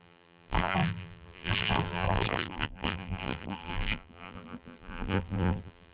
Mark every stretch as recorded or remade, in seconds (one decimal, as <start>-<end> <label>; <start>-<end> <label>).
0.0-5.9 remade